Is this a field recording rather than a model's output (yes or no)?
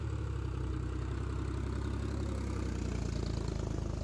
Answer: yes